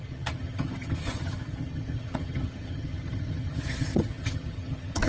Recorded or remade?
remade